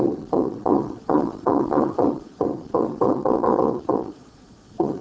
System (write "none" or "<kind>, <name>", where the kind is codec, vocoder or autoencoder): vocoder, Vocos